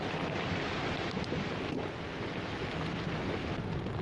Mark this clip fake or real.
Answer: real